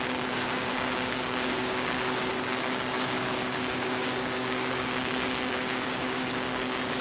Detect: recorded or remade remade